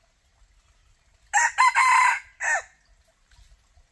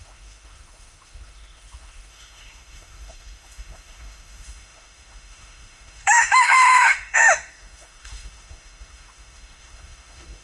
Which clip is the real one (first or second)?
first